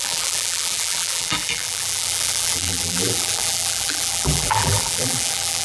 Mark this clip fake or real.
fake